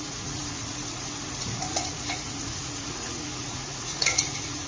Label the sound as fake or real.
fake